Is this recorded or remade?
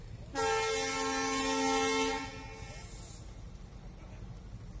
recorded